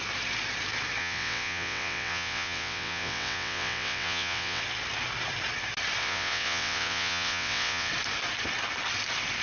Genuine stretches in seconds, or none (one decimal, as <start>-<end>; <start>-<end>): 0.0-1.0; 4.6-6.0; 7.9-9.4